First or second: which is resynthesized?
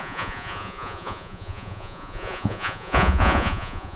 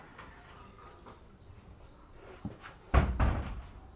first